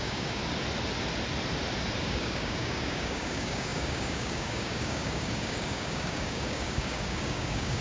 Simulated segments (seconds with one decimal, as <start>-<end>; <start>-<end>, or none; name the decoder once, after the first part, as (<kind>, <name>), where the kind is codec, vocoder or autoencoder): 0.0-0.4 (codec, DAC); 2.0-7.8